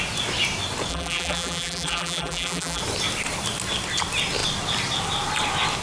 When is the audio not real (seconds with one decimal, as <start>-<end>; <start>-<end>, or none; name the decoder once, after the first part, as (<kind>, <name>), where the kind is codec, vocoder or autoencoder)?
0.9-2.8 (vocoder, BigVGAN v2)